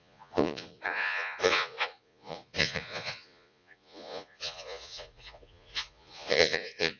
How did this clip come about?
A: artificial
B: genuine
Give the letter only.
A